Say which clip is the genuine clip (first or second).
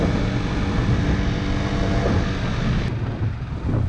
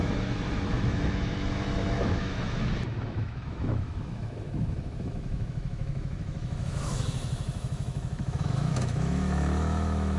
first